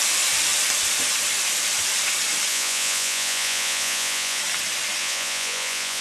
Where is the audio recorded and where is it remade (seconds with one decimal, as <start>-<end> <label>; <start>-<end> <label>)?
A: 0.0-2.5 recorded; 2.5-4.4 remade; 4.4-5.0 recorded; 5.0-6.0 remade

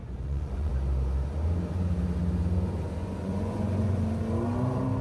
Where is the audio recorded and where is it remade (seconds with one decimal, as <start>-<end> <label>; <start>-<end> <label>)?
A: 0.0-0.7 remade; 0.7-3.0 recorded; 3.0-4.0 remade; 4.0-5.0 recorded

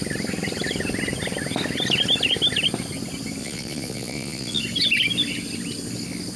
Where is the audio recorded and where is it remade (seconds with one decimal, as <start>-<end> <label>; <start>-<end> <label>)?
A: 0.0-3.4 recorded; 3.4-4.6 remade; 4.6-6.4 recorded

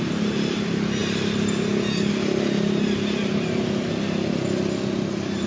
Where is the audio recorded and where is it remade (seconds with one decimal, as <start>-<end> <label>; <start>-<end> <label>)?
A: 0.0-5.5 recorded

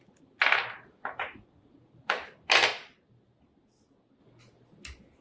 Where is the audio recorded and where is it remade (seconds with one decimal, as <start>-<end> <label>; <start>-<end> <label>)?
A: 0.0-1.2 recorded; 1.2-2.0 remade; 2.0-5.2 recorded

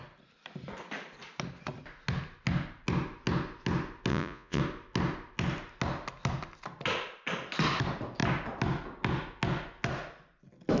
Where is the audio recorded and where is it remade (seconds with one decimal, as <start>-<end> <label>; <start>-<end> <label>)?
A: 0.0-4.1 recorded; 4.1-4.6 remade; 4.6-10.8 recorded

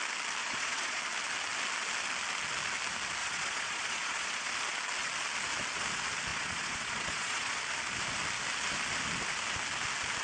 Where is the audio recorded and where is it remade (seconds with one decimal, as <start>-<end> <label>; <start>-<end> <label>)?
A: 0.0-0.4 recorded; 0.4-1.0 remade; 1.0-3.2 recorded; 3.2-4.5 remade; 4.5-6.3 recorded; 6.3-7.6 remade; 7.6-10.2 recorded

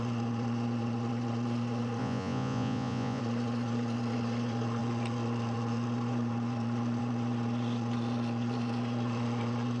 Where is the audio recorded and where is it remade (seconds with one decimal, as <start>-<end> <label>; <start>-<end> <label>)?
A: 0.0-2.0 recorded; 2.0-3.2 remade; 3.2-9.8 recorded